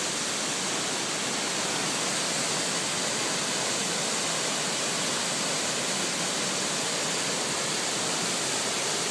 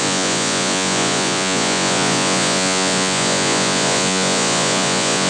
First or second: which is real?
first